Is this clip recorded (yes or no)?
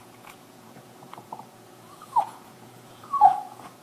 no